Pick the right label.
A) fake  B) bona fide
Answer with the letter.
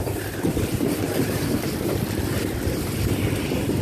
A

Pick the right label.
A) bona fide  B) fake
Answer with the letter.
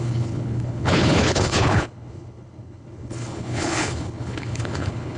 B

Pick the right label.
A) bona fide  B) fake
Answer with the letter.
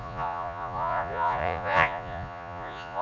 B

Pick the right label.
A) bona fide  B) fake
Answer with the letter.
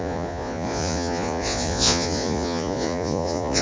B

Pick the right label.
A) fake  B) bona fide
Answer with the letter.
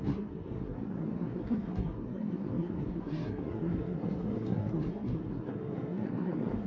A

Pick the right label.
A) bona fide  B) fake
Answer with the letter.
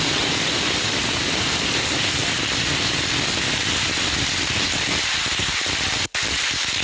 A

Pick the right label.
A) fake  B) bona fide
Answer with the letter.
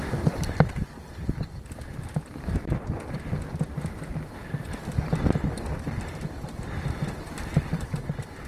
A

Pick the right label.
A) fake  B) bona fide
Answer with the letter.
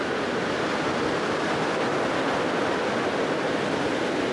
B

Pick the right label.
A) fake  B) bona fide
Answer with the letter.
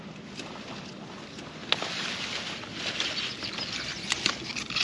B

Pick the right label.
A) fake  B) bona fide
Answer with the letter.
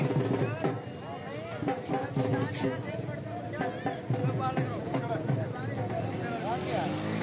B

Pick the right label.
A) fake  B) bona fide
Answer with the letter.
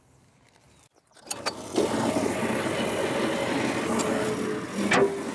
B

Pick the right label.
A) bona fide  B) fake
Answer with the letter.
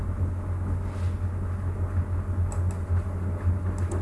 A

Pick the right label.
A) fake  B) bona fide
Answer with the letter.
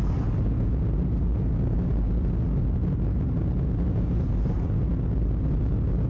B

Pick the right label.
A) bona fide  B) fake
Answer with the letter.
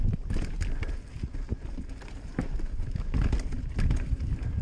A